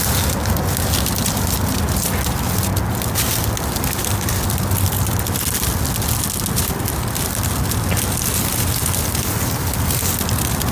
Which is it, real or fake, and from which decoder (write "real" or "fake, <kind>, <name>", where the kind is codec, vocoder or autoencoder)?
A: real